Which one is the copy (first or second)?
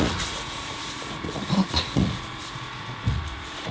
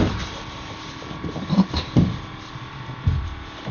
first